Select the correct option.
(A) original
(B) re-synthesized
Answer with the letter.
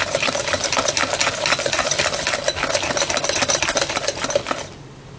A